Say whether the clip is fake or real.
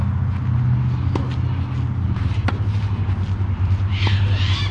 real